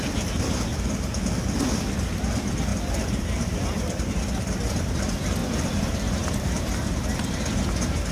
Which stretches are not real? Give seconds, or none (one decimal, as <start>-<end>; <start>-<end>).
0.7-1.2; 2.7-4.0; 5.4-6.7